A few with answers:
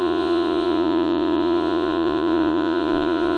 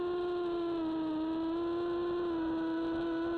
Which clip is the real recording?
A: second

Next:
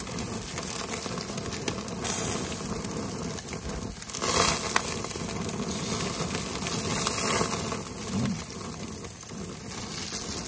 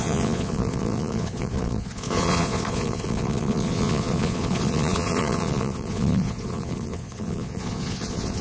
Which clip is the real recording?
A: first